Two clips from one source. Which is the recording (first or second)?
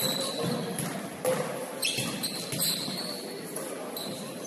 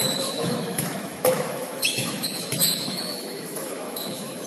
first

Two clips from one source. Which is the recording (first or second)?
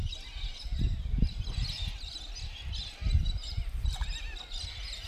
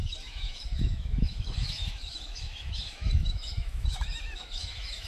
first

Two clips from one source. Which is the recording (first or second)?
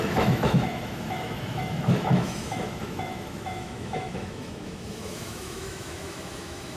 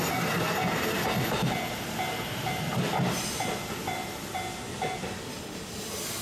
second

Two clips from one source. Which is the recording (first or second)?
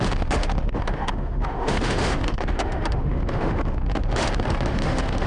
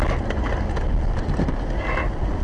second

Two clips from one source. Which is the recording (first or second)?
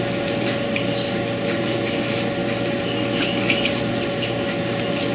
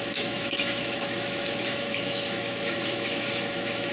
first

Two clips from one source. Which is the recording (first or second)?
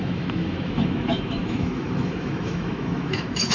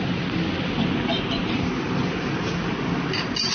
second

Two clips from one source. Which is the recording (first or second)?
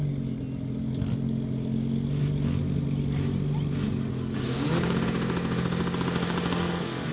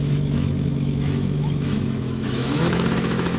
first